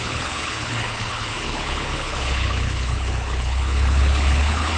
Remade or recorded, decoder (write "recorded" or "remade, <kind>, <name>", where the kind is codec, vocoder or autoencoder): remade, codec, HILCodec